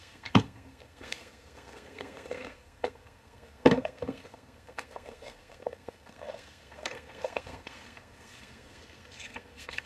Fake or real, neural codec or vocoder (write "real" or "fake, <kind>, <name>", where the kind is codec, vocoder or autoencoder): fake, codec, SNAC